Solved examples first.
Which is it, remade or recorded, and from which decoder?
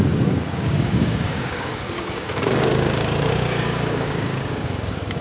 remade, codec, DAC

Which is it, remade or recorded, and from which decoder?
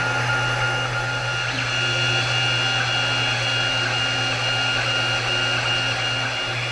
recorded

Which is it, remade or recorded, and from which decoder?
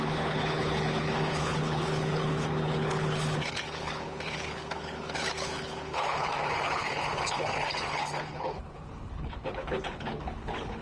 remade, codec, HILCodec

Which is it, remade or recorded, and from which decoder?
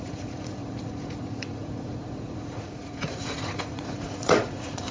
remade, vocoder, Vocos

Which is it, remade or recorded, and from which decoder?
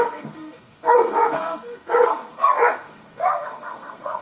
remade, codec, SNAC